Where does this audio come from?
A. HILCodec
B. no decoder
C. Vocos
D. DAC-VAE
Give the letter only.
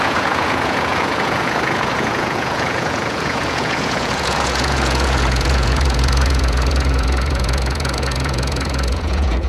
C